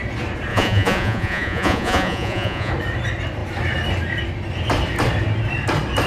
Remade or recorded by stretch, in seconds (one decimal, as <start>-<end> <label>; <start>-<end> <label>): 0.0-0.5 recorded; 0.5-2.7 remade; 2.7-6.1 recorded